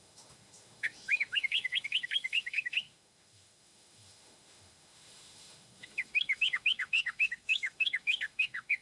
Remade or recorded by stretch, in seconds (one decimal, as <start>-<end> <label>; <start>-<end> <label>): 0.0-8.8 remade